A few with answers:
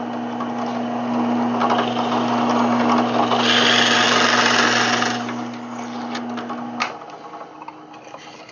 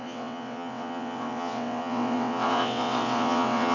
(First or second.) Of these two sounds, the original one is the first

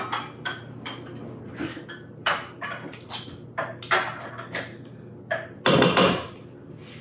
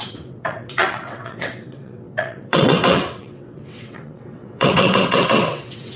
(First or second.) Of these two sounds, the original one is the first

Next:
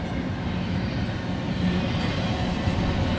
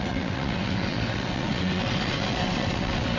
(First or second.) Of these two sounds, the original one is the first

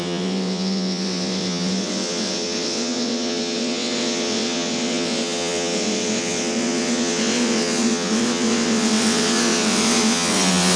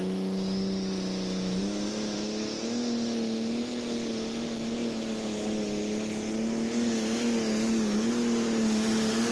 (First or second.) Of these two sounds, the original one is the second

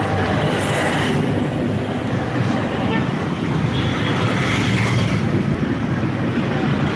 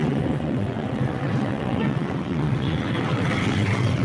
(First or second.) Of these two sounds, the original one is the first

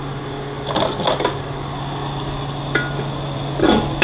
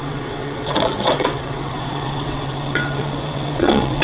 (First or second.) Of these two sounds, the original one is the first